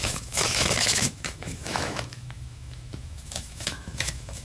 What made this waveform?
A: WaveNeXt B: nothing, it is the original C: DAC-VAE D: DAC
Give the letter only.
C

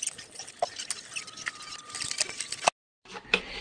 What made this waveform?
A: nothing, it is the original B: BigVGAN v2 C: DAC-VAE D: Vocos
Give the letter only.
A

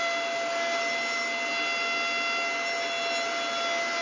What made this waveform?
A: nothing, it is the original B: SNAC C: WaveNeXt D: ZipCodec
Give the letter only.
A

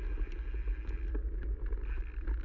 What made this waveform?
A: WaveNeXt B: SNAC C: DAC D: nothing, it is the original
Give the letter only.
D